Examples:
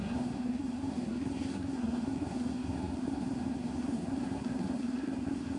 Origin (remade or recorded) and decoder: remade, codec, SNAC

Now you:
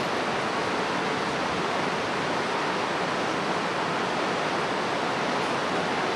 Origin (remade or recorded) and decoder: recorded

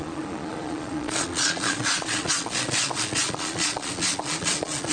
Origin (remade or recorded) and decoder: remade, vocoder, Vocos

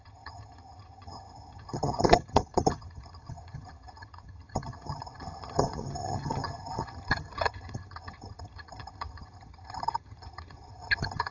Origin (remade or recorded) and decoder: remade, vocoder, HiFi-GAN